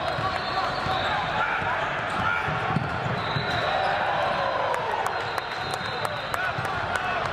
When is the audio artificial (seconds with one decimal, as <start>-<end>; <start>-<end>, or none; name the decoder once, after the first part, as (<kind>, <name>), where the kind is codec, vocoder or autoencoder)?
0.0-0.7 (vocoder, BigVGAN v2); 1.2-2.2